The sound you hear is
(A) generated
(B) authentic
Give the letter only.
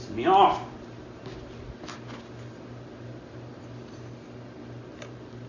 B